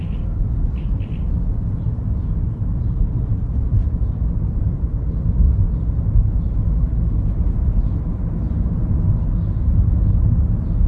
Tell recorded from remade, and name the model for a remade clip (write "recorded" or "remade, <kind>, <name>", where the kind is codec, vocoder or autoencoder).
recorded